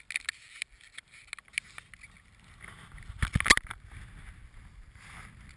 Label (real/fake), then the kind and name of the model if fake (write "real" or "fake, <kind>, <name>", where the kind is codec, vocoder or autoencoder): real